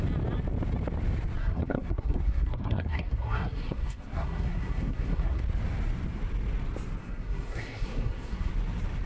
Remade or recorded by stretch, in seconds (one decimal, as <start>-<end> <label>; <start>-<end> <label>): 0.0-1.4 recorded; 1.4-5.4 remade; 5.4-7.0 recorded; 7.0-8.5 remade; 8.5-9.1 recorded